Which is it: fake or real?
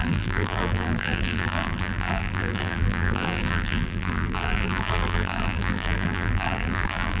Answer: fake